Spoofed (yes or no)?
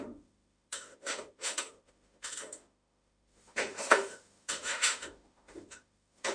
yes